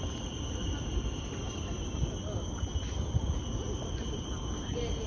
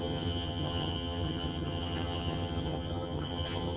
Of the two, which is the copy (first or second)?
second